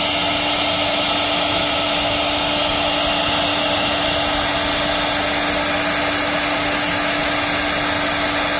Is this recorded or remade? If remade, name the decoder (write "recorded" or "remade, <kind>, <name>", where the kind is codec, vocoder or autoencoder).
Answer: recorded